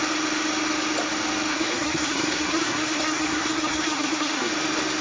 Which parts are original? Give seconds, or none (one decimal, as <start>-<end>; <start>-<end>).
0.0-1.5; 4.5-5.0